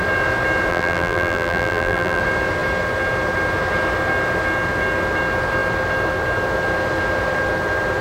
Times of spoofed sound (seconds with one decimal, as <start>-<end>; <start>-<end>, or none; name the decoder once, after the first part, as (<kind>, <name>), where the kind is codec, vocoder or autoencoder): 0.7-2.2 (vocoder, BigVGAN v2)